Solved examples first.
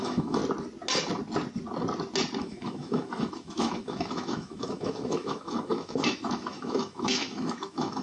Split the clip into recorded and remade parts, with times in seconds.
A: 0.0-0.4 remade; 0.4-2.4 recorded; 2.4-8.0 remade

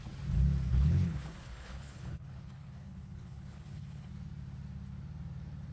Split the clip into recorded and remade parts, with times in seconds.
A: 0.0-0.7 recorded; 0.7-4.1 remade; 4.1-5.7 recorded

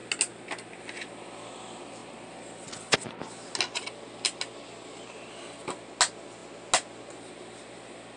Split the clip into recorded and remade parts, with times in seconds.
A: 0.0-8.2 recorded

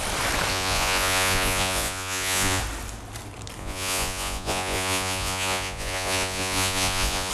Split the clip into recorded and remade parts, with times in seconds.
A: 0.0-0.5 recorded; 0.5-2.6 remade; 2.6-3.6 recorded; 3.6-7.3 remade

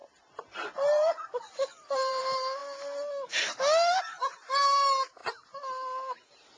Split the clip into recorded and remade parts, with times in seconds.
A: 0.0-2.2 remade; 2.2-6.6 recorded

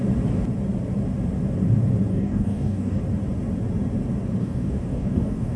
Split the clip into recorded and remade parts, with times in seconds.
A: 0.0-2.1 recorded; 2.1-3.0 remade; 3.0-4.4 recorded; 4.4-5.6 remade

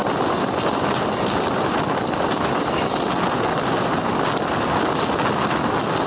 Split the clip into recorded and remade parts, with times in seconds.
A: 0.0-6.1 recorded